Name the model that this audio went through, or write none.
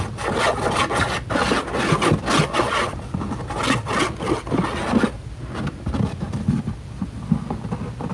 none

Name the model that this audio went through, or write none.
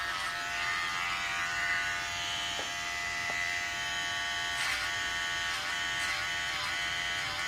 vocoder, BigVGAN v2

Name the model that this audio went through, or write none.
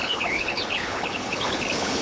codec, HILCodec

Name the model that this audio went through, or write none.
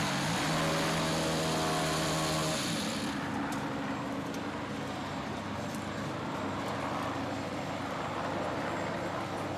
none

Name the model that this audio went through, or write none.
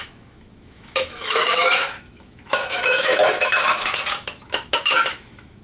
autoencoder, DAC-VAE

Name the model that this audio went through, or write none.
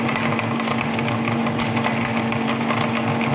none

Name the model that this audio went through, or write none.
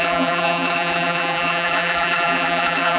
vocoder, BigVGAN v2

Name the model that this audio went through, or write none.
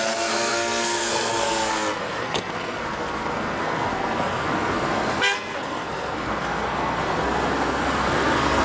codec, SNAC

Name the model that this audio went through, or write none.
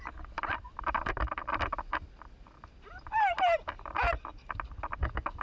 none